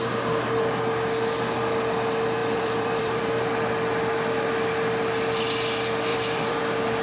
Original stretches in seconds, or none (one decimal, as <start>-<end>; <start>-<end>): 0.0-2.4; 3.2-6.1; 6.6-7.0